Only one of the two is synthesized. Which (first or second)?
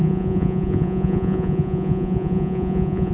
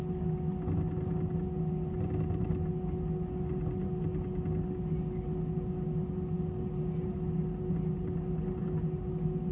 first